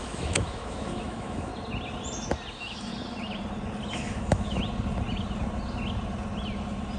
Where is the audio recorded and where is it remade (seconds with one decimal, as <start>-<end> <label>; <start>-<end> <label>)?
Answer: 0.0-1.5 remade; 1.5-2.5 recorded; 2.5-2.9 remade; 2.9-3.9 recorded; 3.9-4.6 remade; 4.6-7.0 recorded

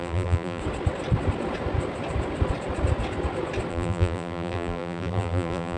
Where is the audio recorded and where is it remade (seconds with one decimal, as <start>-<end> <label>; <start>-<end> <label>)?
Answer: 0.0-0.6 remade; 0.6-3.7 recorded; 3.7-5.8 remade

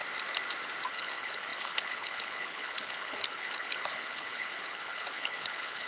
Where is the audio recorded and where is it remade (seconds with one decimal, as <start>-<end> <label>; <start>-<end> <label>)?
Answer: 0.0-0.9 recorded; 0.9-5.9 remade

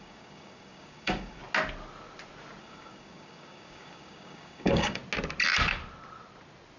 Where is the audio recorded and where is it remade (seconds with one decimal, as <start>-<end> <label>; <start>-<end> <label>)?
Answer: 0.0-1.4 remade; 1.4-2.6 recorded; 2.6-5.0 remade; 5.0-6.8 recorded

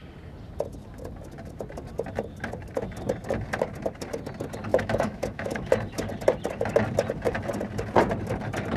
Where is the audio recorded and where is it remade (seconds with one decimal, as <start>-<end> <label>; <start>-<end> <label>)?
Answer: 0.0-4.7 recorded; 4.7-5.7 remade; 5.7-8.8 recorded